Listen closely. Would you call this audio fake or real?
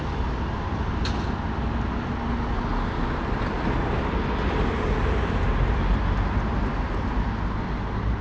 real